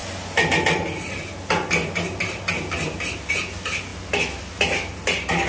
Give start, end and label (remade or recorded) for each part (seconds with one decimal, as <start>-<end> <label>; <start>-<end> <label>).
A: 0.0-5.5 recorded